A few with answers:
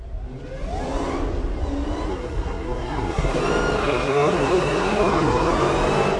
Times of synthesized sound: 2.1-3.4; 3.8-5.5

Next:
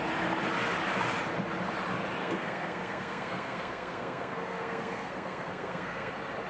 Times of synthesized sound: 2.2-6.1

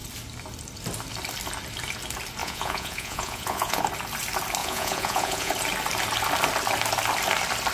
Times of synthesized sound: 2.4-3.8; 4.6-5.5

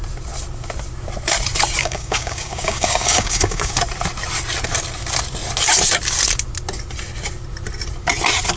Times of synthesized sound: 1.8-3.7

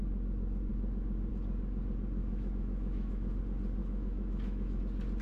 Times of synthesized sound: 2.2-3.4; 3.8-4.8

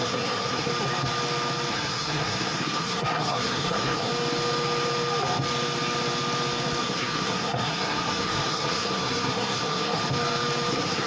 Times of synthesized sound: 0.0-0.7; 1.7-4.1; 6.8-10.0; 10.7-11.1

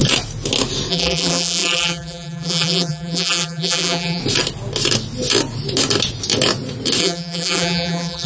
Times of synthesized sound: 0.9-4.2; 7.0-8.3